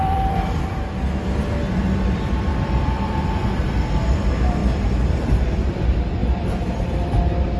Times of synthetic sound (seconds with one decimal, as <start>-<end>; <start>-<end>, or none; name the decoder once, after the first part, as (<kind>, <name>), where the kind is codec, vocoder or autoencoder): 0.0-7.6 (vocoder, BigVGAN v2)